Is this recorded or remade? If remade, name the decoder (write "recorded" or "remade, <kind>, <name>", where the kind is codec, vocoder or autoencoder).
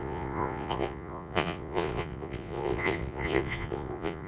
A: remade, vocoder, Vocos